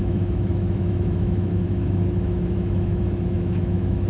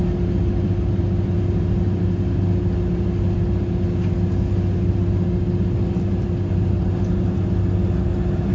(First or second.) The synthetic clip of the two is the first